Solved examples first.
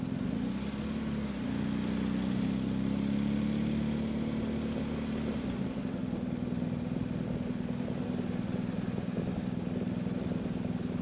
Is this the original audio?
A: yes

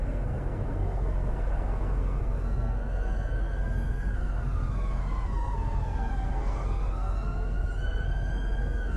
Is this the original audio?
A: no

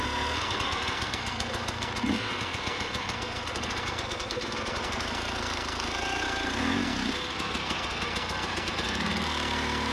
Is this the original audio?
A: no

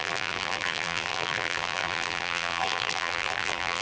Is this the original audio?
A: no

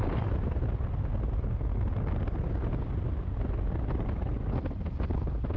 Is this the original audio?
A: yes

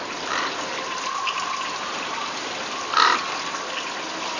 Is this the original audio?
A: yes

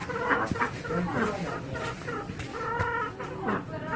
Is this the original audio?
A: yes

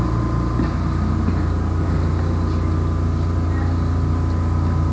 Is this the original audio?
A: yes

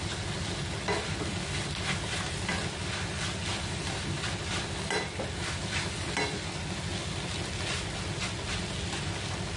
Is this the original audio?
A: yes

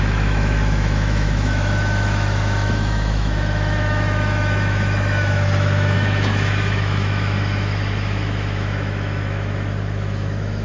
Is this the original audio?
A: no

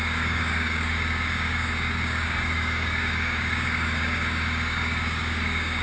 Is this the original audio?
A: no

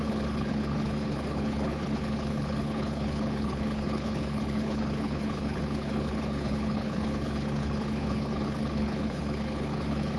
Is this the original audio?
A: no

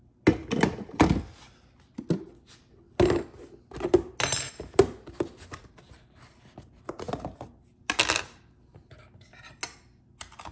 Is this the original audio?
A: yes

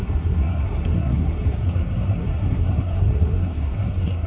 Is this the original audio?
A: no